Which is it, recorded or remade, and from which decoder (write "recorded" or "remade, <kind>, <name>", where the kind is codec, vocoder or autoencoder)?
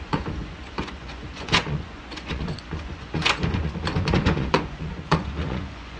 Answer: remade, vocoder, Vocos